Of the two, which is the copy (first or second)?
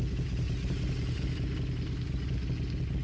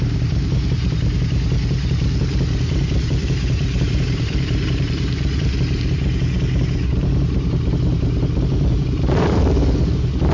second